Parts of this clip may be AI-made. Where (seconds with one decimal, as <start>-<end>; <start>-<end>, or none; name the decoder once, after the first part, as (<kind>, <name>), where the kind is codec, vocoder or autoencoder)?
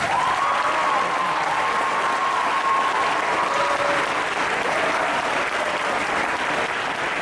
none